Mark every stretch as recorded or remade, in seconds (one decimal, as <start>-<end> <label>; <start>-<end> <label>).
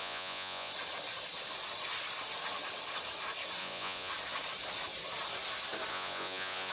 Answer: 0.0-0.7 remade; 0.7-3.6 recorded; 3.6-4.1 remade; 4.1-5.9 recorded; 5.9-6.7 remade